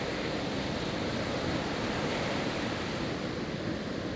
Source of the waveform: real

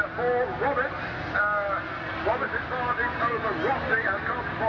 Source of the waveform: real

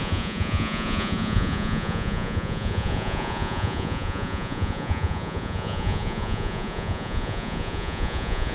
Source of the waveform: fake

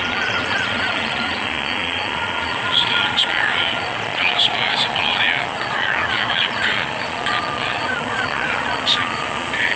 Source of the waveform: fake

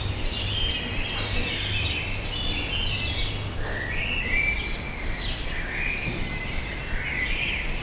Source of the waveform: real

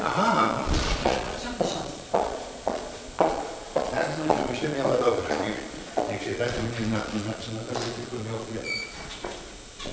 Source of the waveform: fake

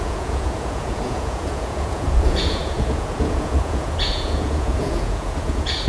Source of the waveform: fake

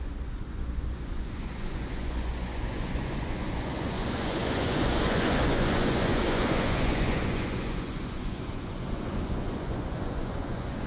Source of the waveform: fake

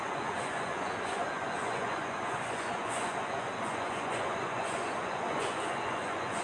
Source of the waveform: fake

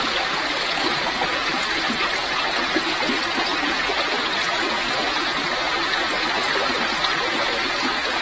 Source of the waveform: fake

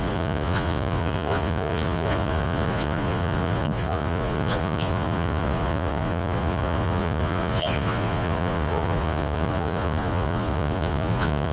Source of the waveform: fake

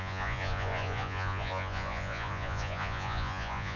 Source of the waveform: fake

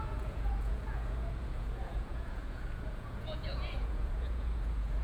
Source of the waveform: fake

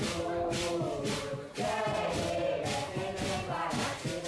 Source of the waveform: real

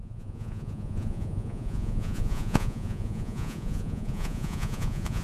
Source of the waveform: fake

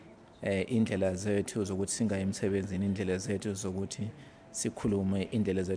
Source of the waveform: real